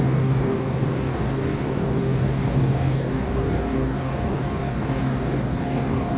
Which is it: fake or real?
fake